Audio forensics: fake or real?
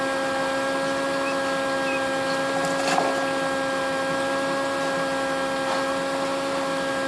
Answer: real